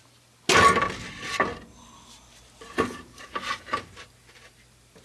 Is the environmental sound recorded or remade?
recorded